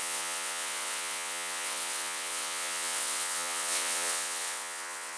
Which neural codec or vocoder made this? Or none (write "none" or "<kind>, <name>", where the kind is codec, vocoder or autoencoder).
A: vocoder, WaveNeXt